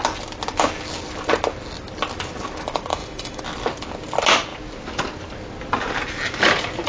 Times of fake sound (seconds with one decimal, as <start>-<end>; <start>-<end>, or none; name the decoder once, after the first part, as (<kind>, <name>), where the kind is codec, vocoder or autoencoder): 2.9-3.4 (autoencoder, DAC-VAE)